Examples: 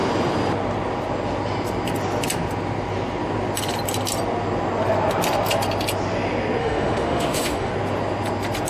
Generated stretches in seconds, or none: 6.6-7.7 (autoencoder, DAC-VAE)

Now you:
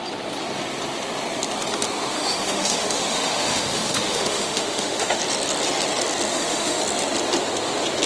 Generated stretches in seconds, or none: 2.1-5.2 (autoencoder, DAC-VAE); 6.3-6.8